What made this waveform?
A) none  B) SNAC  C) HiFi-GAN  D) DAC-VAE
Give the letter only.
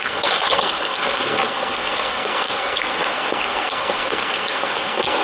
B